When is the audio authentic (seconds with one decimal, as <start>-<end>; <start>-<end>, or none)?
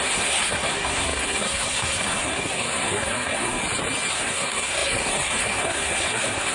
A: 3.6-4.1